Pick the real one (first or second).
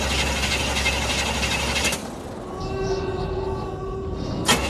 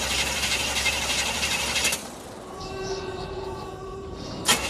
first